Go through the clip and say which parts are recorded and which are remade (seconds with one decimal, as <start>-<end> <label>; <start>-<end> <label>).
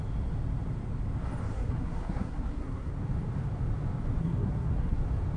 0.0-1.5 recorded; 1.5-2.9 remade; 2.9-4.2 recorded; 4.2-5.0 remade; 5.0-5.4 recorded